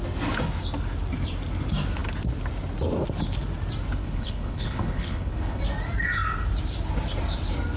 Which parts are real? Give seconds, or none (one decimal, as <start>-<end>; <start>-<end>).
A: 0.0-4.0; 5.6-7.8